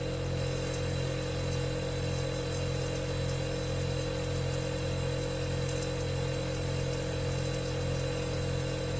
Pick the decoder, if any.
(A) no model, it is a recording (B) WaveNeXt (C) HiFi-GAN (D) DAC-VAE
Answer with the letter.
A